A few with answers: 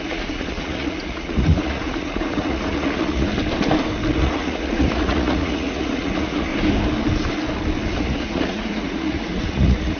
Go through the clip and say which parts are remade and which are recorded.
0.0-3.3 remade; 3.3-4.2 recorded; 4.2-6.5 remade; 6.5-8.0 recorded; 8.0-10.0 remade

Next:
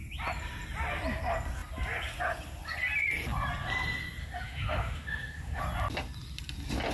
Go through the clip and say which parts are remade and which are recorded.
0.0-4.2 recorded; 4.2-5.6 remade; 5.6-6.9 recorded

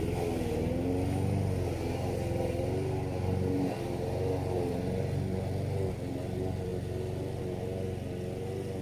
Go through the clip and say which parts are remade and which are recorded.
0.0-8.8 recorded

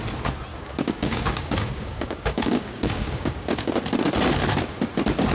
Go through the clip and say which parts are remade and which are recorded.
0.0-0.5 recorded; 0.5-3.7 remade; 3.7-5.3 recorded

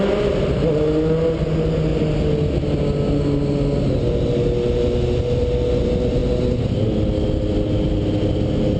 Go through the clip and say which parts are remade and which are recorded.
0.0-8.8 recorded

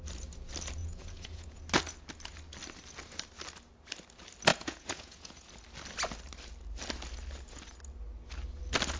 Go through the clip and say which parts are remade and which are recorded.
0.0-0.8 recorded; 0.8-1.6 remade; 1.6-4.5 recorded; 4.5-5.5 remade; 5.5-9.0 recorded